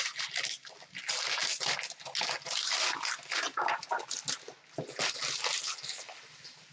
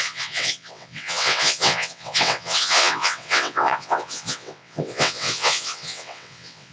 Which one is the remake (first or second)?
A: second